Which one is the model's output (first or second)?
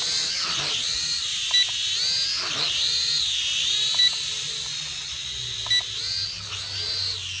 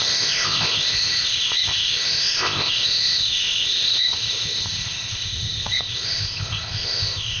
second